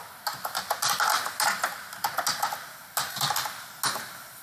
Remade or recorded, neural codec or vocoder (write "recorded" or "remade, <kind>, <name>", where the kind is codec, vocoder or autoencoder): recorded